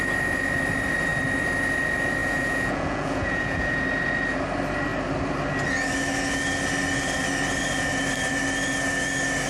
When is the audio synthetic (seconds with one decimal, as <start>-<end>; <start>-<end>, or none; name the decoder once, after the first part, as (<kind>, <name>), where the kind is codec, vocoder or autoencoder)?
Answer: 2.2-3.8 (vocoder, Vocos)